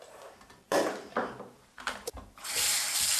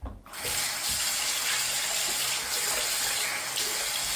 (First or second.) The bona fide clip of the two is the second